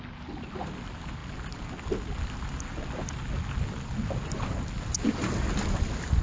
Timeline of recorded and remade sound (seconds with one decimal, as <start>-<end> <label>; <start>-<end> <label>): 0.0-6.2 recorded